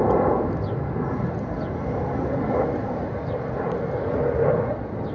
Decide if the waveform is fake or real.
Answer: real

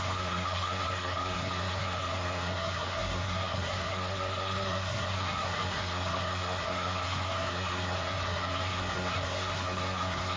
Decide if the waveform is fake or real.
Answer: fake